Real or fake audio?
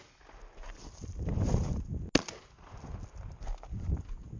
real